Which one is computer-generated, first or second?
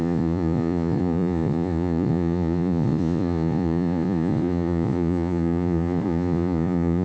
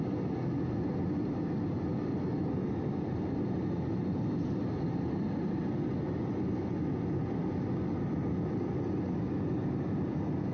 first